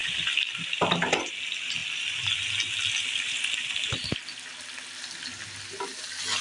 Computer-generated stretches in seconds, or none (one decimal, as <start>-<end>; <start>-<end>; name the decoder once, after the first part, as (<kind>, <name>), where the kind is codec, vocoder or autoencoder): none